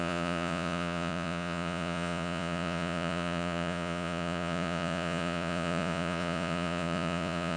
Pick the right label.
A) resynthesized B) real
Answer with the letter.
A